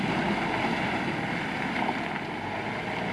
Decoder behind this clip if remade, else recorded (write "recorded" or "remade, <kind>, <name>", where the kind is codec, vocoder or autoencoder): recorded